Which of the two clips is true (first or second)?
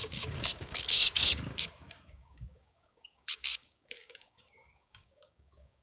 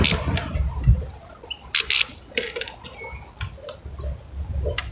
second